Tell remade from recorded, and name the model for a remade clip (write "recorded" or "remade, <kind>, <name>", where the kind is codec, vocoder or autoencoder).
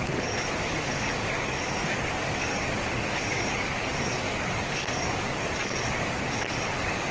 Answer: remade, codec, DAC